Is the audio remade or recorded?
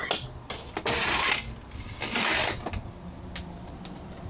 recorded